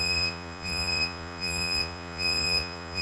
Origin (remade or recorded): remade